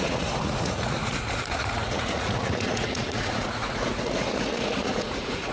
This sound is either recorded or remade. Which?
remade